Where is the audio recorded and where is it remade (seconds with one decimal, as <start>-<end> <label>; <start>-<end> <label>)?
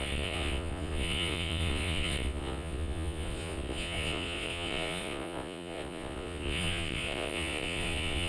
0.0-8.3 remade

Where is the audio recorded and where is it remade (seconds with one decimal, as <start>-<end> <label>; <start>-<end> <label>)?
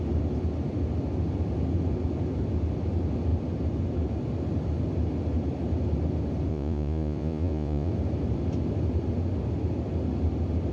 0.0-6.5 recorded; 6.5-7.9 remade; 7.9-10.7 recorded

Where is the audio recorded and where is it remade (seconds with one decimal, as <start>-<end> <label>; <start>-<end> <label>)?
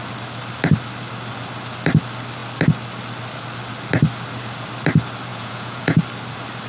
0.0-5.3 recorded; 5.3-6.0 remade; 6.0-6.7 recorded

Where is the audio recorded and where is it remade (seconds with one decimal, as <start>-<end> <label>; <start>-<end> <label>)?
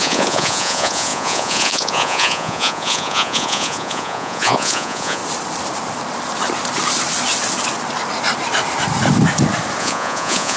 0.0-5.2 remade; 5.2-9.8 recorded; 9.8-10.6 remade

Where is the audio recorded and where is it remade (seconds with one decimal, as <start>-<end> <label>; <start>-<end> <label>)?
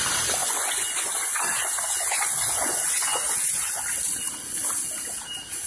0.0-0.4 recorded; 0.4-3.8 remade; 3.8-5.7 recorded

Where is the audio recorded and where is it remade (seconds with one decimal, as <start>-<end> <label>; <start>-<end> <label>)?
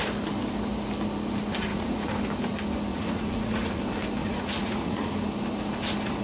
0.0-1.7 recorded; 1.7-2.2 remade; 2.2-2.9 recorded; 2.9-3.8 remade; 3.8-4.2 recorded; 4.2-5.1 remade; 5.1-6.2 recorded